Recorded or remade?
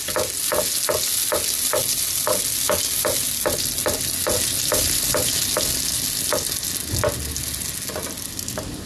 recorded